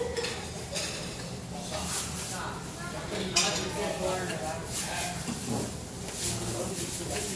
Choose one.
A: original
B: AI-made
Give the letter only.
A